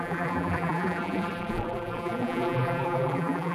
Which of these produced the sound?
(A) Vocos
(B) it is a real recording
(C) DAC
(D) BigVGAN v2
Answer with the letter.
D